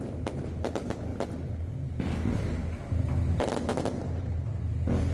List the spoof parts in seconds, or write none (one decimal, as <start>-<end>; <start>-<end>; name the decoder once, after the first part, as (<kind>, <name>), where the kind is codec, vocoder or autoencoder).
none